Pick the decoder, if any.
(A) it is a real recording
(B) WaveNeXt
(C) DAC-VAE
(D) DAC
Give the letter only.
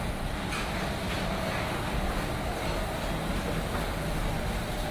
A